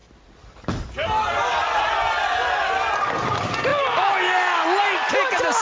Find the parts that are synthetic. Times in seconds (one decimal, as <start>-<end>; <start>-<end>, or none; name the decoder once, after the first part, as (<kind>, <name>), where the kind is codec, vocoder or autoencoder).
none